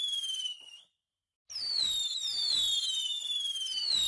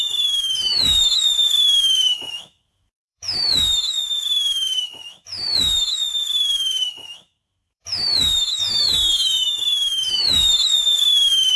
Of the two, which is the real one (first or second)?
first